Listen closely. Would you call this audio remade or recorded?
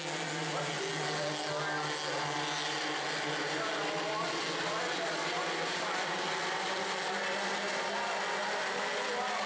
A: recorded